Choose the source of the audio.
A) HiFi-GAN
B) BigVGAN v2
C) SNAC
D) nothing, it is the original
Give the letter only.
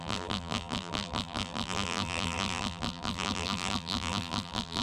B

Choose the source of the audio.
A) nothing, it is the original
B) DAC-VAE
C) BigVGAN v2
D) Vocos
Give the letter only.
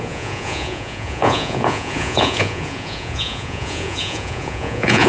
D